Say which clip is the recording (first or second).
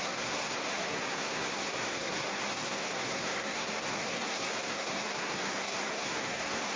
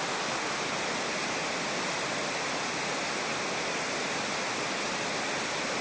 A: second